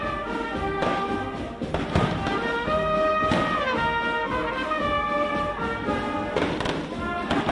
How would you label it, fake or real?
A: real